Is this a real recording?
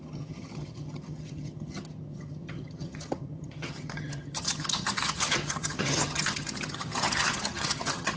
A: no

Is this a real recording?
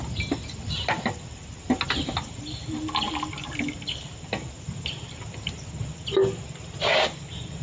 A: yes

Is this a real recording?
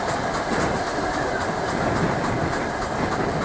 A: yes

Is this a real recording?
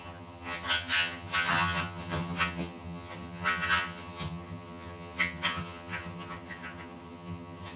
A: no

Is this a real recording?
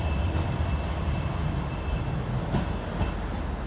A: yes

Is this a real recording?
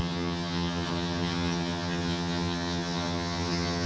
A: no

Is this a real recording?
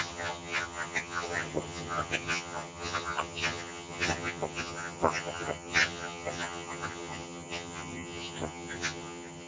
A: no